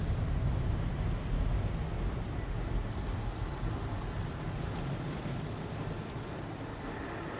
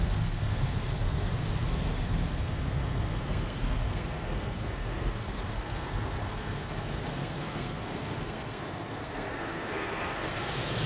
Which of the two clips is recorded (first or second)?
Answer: first